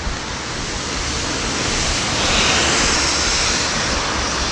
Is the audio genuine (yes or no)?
yes